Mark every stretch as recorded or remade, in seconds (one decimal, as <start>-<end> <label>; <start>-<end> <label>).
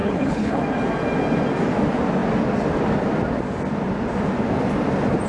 0.0-0.6 remade; 0.6-5.3 recorded